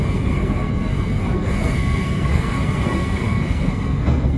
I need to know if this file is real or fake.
fake